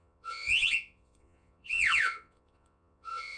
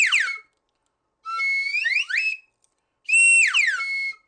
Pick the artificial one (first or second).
first